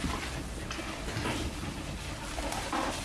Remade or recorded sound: recorded